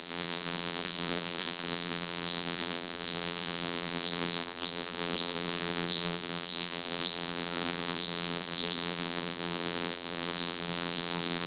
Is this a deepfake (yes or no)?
yes